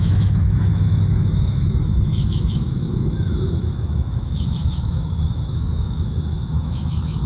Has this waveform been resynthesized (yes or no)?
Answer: yes